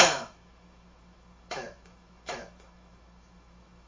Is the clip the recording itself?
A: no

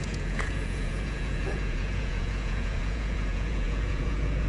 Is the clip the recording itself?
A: no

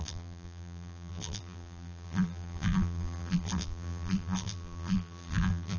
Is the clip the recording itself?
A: no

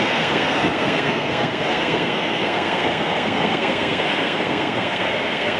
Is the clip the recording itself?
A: no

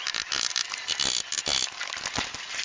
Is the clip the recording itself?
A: yes